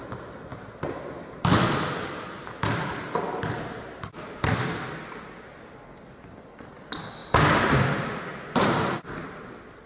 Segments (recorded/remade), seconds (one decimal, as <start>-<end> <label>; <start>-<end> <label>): 0.0-0.5 recorded; 0.5-4.8 remade; 4.8-7.2 recorded; 7.2-7.9 remade; 7.9-9.9 recorded